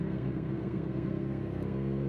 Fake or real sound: fake